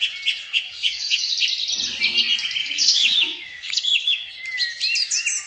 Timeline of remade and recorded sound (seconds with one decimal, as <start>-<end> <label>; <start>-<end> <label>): 0.0-0.4 recorded; 0.4-1.3 remade; 1.3-2.6 recorded; 2.6-4.3 remade; 4.3-5.5 recorded